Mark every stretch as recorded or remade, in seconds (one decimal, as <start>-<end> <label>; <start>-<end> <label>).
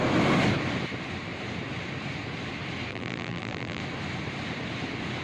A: 0.0-2.9 recorded; 2.9-3.8 remade; 3.8-5.2 recorded